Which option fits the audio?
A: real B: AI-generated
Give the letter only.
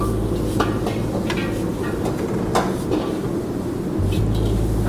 A